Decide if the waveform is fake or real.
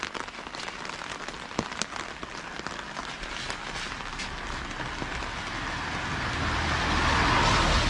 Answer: real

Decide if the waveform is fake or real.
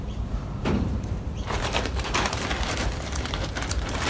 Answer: fake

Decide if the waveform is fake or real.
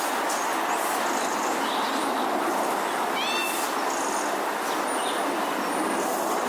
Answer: real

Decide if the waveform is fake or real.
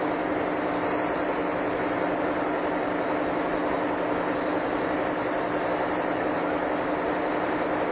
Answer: real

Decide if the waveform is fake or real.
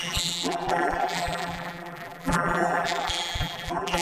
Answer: fake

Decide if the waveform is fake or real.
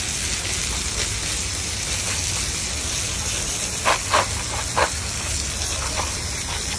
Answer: real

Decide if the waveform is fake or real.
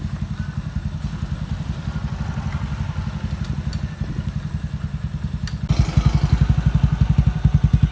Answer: real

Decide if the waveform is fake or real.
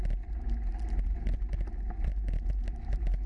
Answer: real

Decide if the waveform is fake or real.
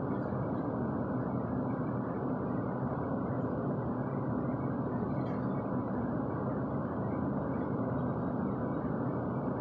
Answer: real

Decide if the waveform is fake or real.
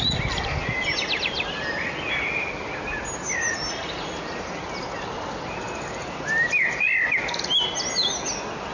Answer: real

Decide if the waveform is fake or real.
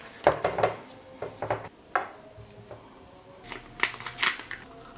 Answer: real